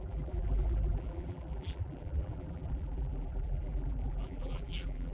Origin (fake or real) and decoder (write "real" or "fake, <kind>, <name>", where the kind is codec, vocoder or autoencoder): fake, vocoder, BigVGAN v2